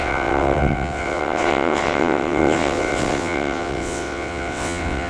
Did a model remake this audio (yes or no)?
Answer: yes